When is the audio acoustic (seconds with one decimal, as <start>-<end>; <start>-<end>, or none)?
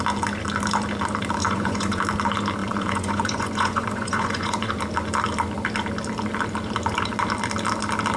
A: 0.0-1.4; 2.0-2.6; 4.7-8.2